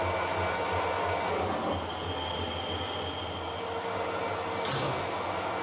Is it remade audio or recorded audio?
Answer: recorded